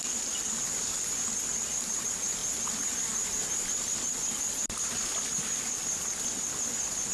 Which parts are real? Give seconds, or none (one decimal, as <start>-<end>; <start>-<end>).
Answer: 0.0-7.1